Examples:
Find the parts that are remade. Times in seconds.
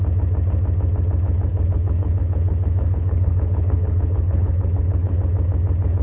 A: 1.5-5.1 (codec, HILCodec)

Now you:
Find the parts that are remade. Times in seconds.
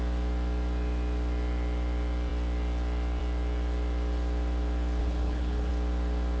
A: 5.0-5.7 (codec, HILCodec)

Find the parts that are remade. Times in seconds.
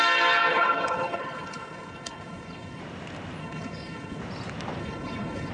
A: 0.5-2.8 (codec, HILCodec); 3.4-4.2; 4.8-5.5